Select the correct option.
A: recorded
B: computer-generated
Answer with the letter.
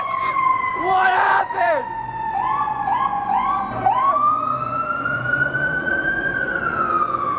B